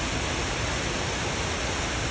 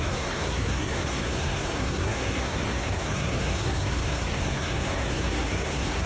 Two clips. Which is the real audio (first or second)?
first